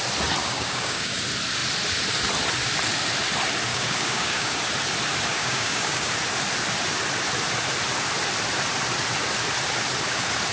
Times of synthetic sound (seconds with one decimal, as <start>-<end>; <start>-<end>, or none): 0.4-1.2; 3.7-4.6; 5.3-6.1